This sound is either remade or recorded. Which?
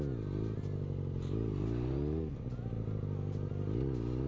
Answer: recorded